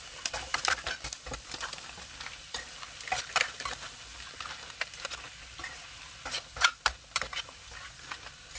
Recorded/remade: recorded